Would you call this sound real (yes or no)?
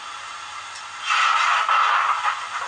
yes